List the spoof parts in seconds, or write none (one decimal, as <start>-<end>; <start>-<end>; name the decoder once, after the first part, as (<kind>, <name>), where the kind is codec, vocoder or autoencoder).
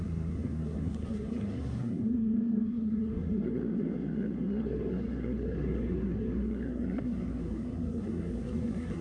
0.0-9.0 (codec, SNAC)